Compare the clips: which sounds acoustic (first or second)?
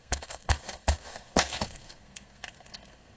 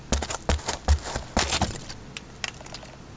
second